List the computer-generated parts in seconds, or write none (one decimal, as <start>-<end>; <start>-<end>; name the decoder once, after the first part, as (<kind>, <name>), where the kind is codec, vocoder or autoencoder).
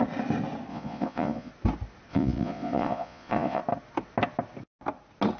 0.7-1.5 (vocoder, Vocos); 2.1-3.6